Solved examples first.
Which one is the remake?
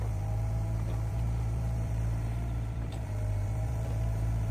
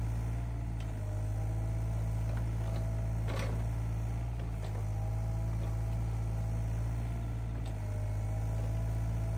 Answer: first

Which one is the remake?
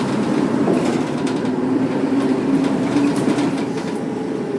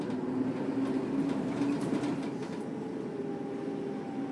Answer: first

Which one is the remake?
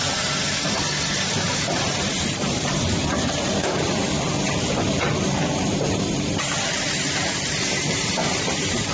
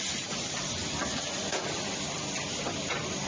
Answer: first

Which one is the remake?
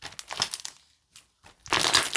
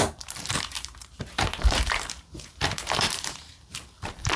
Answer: second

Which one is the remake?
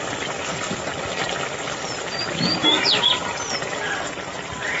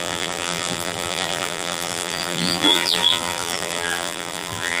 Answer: second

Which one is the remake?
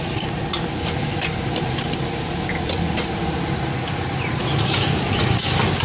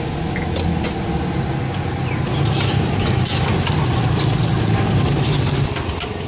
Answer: first